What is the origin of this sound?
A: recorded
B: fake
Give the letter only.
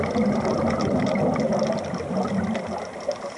A